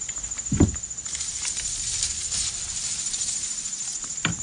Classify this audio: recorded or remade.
recorded